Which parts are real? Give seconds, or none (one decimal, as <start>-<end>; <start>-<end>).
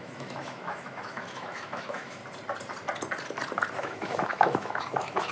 2.2-3.8